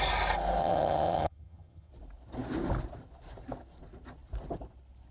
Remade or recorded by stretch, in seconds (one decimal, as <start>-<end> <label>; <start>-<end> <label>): 0.0-0.6 recorded; 0.6-1.9 remade; 1.9-5.1 recorded